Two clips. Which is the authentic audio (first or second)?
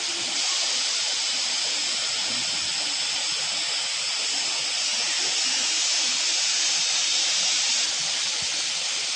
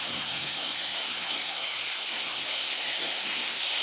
first